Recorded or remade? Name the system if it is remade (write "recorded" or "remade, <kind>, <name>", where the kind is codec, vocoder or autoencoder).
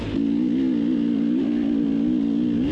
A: recorded